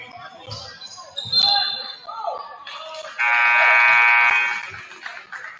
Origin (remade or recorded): recorded